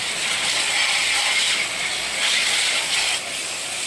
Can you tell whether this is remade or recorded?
recorded